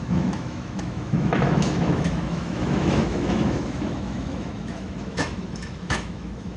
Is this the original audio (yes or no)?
no